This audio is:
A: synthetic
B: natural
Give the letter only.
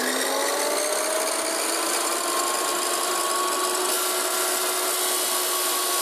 B